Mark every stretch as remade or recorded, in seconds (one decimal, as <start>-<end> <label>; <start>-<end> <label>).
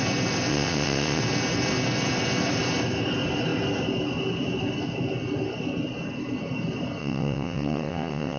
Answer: 0.0-0.5 recorded; 0.5-1.2 remade; 1.2-7.0 recorded; 7.0-8.4 remade